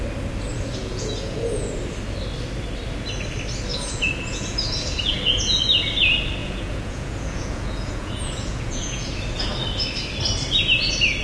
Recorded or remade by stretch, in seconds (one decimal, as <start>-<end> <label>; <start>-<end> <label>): 0.0-0.8 recorded; 0.8-1.7 remade; 1.7-3.7 recorded; 3.7-5.6 remade; 5.6-6.4 recorded; 6.4-9.1 remade; 9.1-11.2 recorded